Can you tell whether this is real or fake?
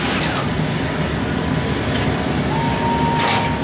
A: real